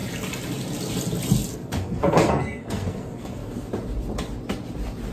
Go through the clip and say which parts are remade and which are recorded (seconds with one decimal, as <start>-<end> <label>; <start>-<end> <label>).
0.0-1.5 recorded; 1.5-3.7 remade; 3.7-5.1 recorded